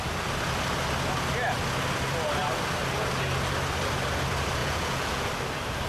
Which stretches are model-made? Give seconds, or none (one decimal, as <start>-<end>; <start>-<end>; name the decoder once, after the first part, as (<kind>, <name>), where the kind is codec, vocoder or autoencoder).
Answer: 4.6-5.3 (vocoder, Vocos)